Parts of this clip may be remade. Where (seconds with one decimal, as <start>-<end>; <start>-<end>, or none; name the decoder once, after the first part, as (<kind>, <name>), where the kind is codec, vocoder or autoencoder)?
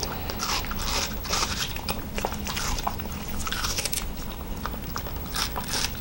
1.3-4.9 (vocoder, BigVGAN v2)